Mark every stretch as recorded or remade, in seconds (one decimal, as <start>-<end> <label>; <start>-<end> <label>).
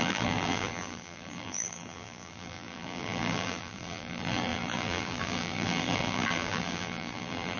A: 0.0-7.6 remade